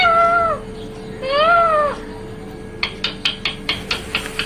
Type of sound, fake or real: real